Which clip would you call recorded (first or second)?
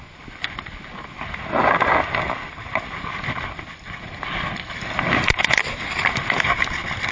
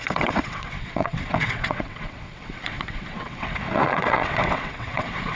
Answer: first